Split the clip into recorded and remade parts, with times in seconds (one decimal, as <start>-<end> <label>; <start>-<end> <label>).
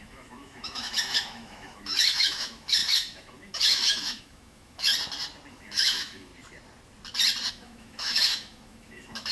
0.0-4.9 remade; 4.9-5.5 recorded; 5.5-6.3 remade; 6.3-7.5 recorded; 7.5-9.3 remade